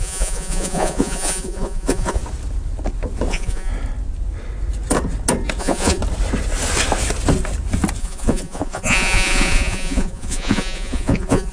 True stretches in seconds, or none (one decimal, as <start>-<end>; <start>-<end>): 2.2-3.3; 3.7-5.6; 6.0-8.0